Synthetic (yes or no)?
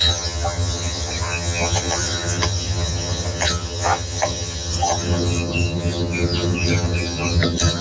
yes